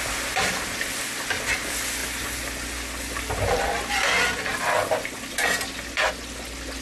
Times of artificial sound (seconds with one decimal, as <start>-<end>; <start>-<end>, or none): none